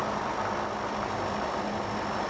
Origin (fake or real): real